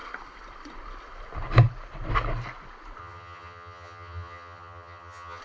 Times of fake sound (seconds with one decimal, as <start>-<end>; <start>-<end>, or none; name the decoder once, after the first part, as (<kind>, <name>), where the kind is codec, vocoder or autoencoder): 3.0-5.4 (vocoder, HiFi-GAN)